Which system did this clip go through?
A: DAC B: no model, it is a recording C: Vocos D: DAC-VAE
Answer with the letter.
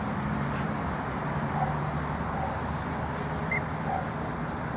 B